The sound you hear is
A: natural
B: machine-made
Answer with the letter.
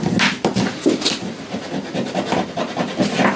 A